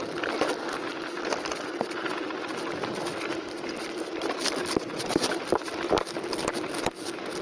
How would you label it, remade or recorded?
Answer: recorded